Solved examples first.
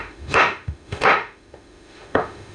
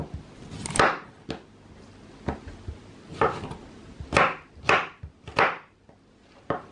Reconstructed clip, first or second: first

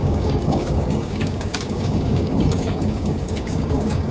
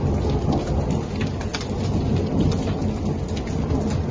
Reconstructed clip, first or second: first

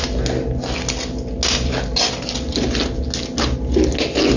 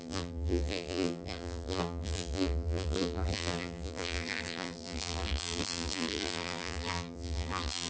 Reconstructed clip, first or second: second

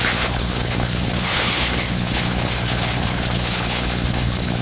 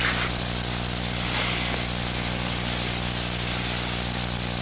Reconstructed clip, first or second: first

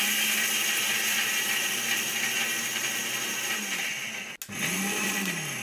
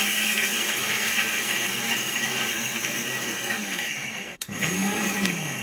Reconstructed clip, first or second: second